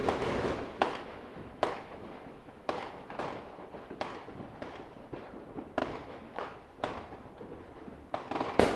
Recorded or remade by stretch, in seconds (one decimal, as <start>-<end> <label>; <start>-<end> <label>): 0.0-3.2 remade; 3.2-5.8 recorded; 5.8-6.6 remade; 6.6-8.8 recorded